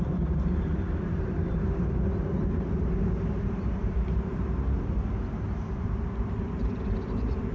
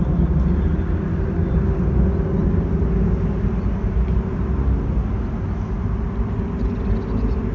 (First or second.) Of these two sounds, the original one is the second